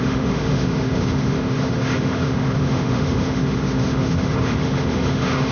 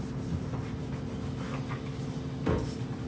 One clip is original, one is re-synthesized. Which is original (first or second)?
second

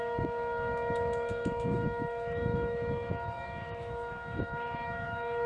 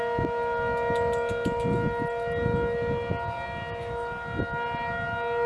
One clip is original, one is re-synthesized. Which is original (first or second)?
second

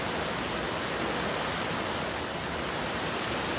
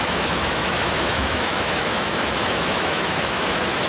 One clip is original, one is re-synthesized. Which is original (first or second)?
first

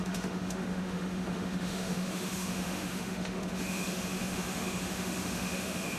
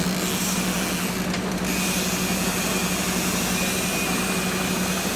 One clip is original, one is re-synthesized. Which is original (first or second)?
second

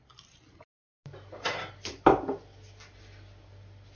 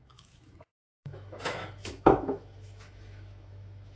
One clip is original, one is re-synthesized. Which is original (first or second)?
first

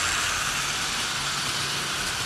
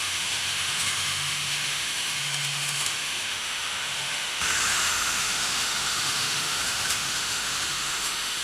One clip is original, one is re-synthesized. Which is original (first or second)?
first